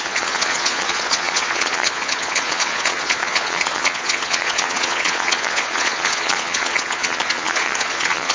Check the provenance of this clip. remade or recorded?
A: remade